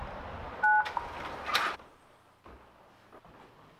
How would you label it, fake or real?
real